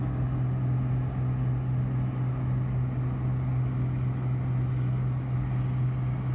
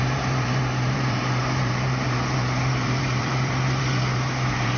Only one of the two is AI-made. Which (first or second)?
second